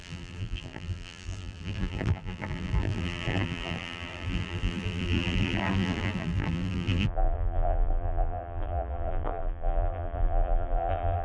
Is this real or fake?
fake